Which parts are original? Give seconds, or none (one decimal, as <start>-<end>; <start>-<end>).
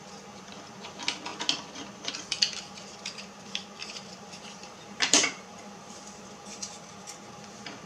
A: 0.0-3.8; 6.7-7.9